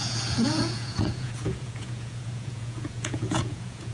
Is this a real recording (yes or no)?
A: no